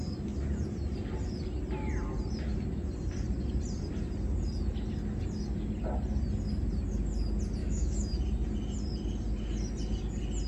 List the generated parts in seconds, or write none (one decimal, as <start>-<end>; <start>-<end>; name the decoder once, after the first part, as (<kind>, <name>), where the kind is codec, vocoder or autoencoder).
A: 7.6-8.1 (autoencoder, DAC-VAE)